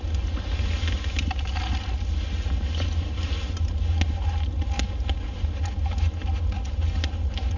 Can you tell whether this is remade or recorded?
recorded